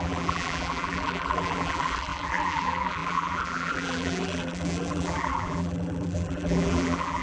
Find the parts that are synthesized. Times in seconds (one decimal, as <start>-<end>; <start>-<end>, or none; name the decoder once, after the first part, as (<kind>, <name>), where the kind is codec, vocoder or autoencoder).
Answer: 0.0-7.2 (vocoder, BigVGAN v2)